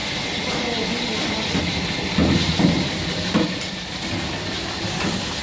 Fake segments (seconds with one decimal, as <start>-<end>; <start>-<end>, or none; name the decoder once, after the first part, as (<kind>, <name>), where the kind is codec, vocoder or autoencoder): 2.2-5.0 (vocoder, BigVGAN v2)